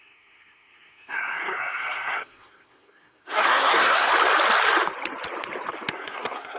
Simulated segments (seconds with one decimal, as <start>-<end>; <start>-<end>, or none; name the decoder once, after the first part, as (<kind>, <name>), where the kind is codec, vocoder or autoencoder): 0.0-4.1 (codec, SNAC); 5.9-6.6

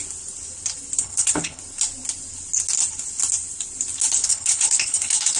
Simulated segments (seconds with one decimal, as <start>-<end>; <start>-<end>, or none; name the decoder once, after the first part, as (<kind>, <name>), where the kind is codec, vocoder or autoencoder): 1.0-1.6 (codec, HILCodec); 4.2-5.4

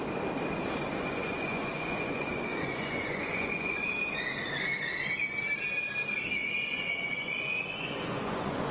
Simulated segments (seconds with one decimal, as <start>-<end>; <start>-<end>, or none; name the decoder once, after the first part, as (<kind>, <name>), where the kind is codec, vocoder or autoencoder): 1.0-3.9 (vocoder, Vocos); 6.4-8.7

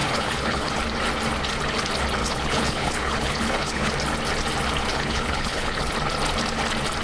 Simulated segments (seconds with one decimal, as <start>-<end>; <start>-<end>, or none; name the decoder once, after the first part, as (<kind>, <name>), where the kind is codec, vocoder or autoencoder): 0.0-0.7 (codec, HILCodec); 2.2-3.9; 4.9-5.9

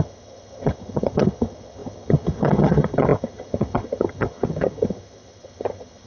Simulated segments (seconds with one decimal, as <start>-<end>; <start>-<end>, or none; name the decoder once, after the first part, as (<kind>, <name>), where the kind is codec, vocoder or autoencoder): 0.0-6.1 (vocoder, HiFi-GAN)

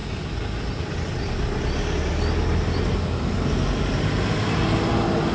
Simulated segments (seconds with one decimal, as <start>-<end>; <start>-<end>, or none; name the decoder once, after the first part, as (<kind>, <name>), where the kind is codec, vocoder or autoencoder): none